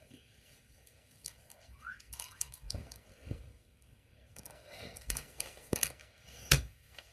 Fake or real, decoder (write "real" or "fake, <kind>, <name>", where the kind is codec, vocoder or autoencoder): fake, codec, SNAC